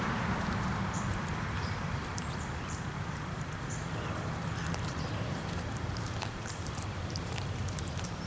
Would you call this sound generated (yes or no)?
yes